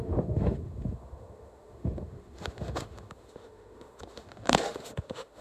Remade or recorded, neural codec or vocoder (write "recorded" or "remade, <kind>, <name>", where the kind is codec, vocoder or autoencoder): remade, autoencoder, DAC-VAE